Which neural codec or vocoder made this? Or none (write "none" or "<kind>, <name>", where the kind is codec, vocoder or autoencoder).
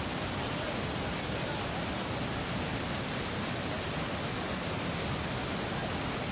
none